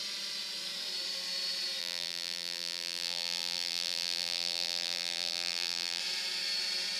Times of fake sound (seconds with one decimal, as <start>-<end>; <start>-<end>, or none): 1.8-6.0